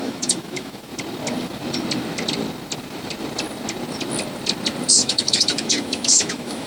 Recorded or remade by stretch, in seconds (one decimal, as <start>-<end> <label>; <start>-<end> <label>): 0.0-0.9 remade; 0.9-4.9 recorded; 4.9-6.7 remade